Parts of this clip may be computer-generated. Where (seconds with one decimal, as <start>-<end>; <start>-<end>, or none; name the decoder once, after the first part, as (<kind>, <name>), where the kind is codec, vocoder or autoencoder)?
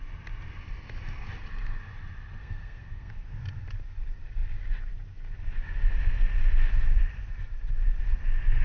2.4-3.1 (codec, SNAC)